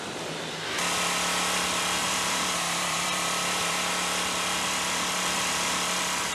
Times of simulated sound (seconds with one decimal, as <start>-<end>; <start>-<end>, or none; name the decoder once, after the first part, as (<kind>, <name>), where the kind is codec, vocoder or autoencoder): 2.0-3.9 (vocoder, BigVGAN v2)